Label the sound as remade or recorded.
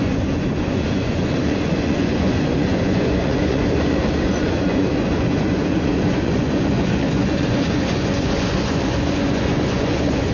remade